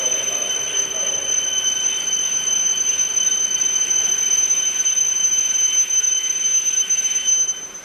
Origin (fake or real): real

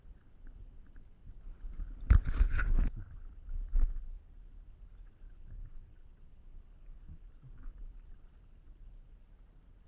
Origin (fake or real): real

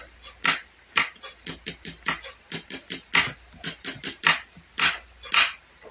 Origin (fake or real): real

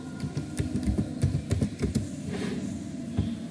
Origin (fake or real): real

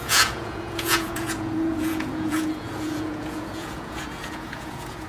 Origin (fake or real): fake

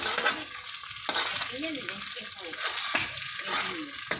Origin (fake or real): real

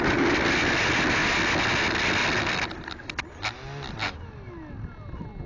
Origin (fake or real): real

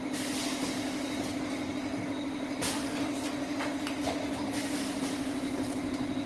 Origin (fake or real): real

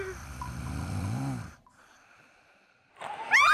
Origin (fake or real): fake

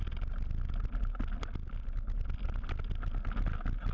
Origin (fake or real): real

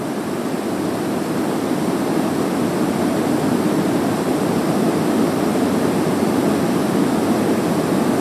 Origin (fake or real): real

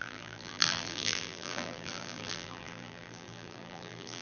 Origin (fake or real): fake